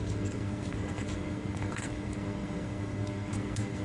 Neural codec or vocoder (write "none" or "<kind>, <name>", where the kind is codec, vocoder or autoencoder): codec, SNAC